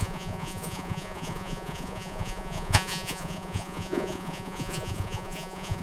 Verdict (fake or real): fake